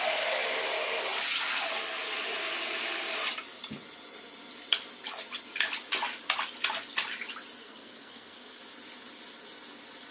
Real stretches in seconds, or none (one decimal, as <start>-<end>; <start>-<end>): 0.0-7.6; 8.6-10.1